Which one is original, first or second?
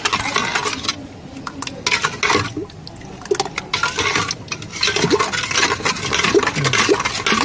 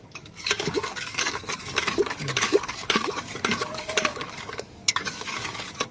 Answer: first